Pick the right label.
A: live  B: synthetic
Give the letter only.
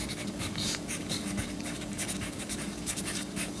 B